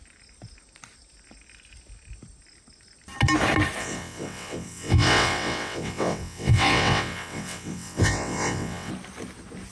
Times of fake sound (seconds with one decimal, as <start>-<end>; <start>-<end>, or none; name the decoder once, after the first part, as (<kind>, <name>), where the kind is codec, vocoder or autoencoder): 3.8-8.9 (vocoder, WaveNeXt)